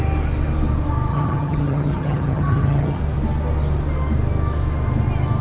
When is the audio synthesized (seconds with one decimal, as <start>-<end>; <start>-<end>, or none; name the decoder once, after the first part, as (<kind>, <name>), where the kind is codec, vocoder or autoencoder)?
1.1-3.0 (vocoder, HiFi-GAN)